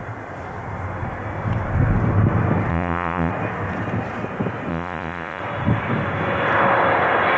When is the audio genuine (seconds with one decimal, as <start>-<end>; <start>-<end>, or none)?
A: 0.0-2.7; 3.3-4.7; 5.4-7.4